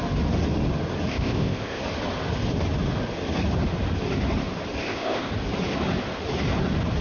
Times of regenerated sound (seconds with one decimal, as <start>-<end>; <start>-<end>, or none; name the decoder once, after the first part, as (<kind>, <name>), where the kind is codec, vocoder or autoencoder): 1.1-1.8 (codec, ZipCodec); 4.8-5.3